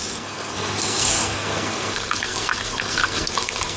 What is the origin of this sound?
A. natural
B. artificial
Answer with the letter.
B